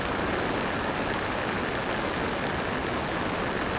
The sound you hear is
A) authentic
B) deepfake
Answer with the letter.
A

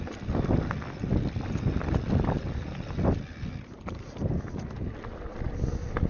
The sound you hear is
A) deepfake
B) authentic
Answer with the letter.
B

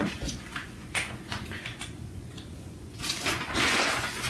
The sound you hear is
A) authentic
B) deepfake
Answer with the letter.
B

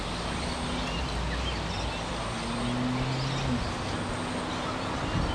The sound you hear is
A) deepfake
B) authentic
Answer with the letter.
B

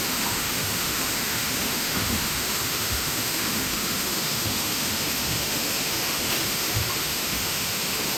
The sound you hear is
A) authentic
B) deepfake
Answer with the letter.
B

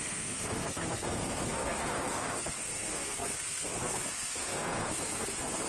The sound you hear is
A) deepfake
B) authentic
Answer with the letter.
A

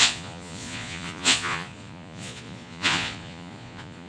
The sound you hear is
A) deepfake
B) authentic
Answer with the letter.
A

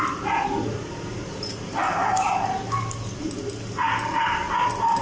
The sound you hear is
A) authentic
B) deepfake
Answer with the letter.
A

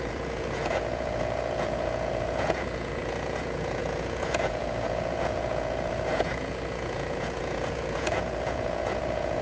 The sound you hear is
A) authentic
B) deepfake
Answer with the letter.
B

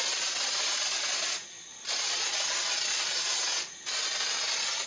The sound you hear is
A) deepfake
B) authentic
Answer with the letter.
B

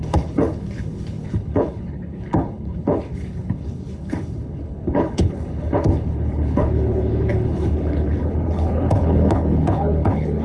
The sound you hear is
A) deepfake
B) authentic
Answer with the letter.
A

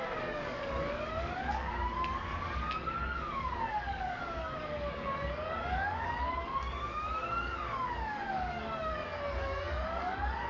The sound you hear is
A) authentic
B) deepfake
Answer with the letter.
B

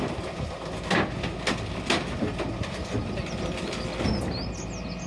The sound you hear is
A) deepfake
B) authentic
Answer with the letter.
B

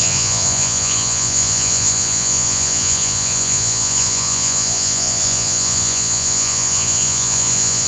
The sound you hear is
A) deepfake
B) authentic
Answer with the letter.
A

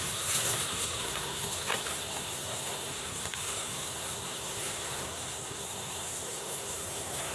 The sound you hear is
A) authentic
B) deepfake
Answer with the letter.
B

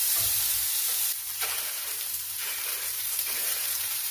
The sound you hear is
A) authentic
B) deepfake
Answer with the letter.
B